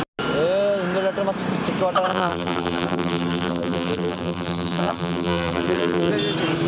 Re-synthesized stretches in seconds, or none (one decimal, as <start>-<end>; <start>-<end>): 2.1-6.1